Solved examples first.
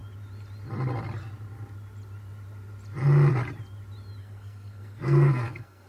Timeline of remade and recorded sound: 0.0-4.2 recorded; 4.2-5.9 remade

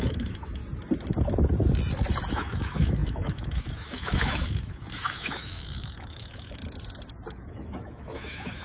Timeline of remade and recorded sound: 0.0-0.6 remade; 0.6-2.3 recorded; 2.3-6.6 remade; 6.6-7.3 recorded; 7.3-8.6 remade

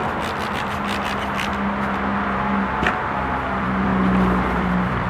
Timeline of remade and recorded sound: 0.0-0.5 recorded; 0.5-1.5 remade; 1.5-3.0 recorded; 3.0-5.1 remade

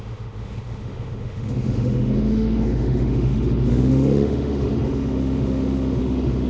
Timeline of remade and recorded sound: 0.0-6.5 remade

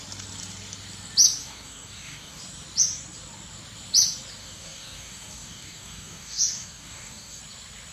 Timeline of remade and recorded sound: 0.0-1.4 recorded; 1.4-2.4 remade; 2.4-4.4 recorded; 4.4-7.4 remade; 7.4-7.9 recorded

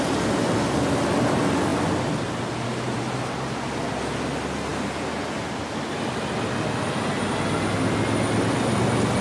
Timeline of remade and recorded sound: 0.0-9.2 recorded

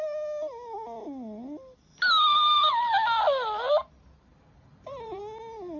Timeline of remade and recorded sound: 0.0-2.3 recorded; 2.3-2.9 remade; 2.9-4.3 recorded; 4.3-5.2 remade; 5.2-5.8 recorded

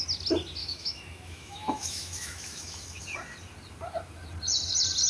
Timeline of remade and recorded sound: 0.0-0.6 recorded; 0.6-3.0 remade; 3.0-5.1 recorded